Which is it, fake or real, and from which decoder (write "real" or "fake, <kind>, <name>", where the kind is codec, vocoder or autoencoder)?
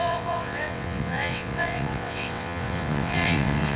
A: fake, vocoder, WaveNeXt